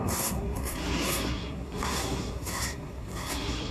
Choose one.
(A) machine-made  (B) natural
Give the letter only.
A